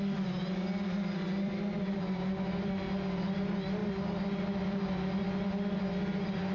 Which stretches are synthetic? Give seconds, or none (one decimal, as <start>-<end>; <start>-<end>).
none